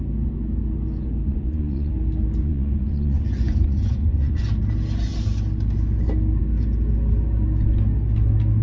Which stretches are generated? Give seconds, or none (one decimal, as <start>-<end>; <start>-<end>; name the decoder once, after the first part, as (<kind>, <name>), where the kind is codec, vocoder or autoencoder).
1.3-1.9 (vocoder, Vocos); 2.4-4.4